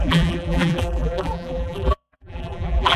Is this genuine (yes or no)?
no